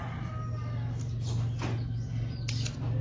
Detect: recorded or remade recorded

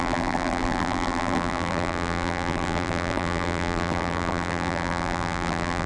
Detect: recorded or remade remade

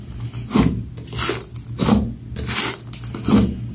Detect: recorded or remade recorded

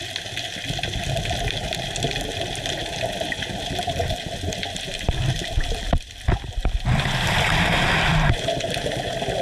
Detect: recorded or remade recorded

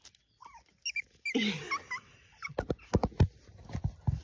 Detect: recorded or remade recorded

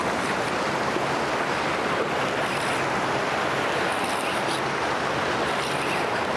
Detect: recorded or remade recorded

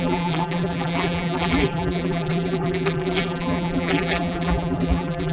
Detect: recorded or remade remade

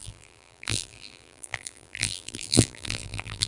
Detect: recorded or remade remade